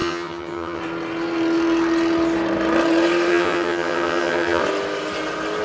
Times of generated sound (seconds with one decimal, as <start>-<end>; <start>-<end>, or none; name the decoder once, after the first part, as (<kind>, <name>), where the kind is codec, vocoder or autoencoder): 0.0-0.8 (vocoder, HiFi-GAN); 3.3-4.6